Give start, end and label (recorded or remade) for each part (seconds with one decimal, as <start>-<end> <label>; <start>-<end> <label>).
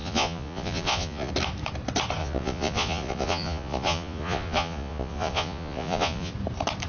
0.0-1.3 remade; 1.3-2.2 recorded; 2.2-6.3 remade; 6.3-6.9 recorded